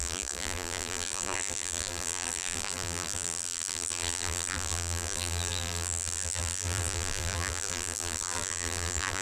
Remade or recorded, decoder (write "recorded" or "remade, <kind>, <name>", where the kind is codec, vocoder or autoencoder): remade, vocoder, BigVGAN v2